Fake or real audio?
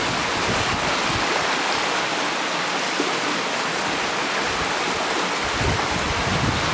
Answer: real